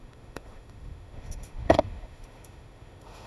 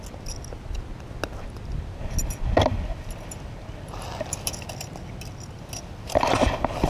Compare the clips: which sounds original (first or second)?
second